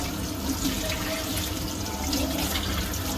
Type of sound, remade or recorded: recorded